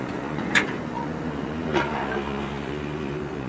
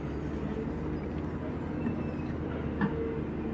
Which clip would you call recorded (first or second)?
second